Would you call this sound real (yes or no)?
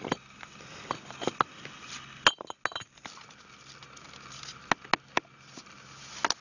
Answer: yes